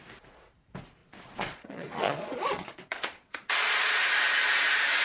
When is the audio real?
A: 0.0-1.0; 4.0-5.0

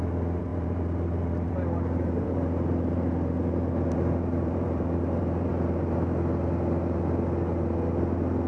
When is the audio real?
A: 5.5-8.5

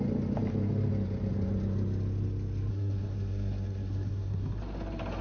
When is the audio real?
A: 0.0-2.7; 4.6-5.2

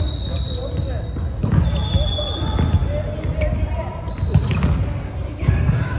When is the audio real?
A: 0.0-5.0

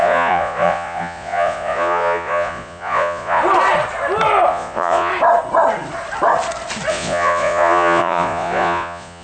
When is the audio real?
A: 3.4-4.5; 5.1-6.9

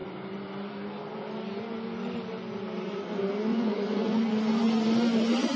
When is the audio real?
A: 0.0-3.5; 4.2-5.6

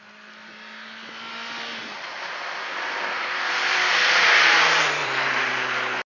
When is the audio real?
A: 0.0-5.0; 5.5-6.2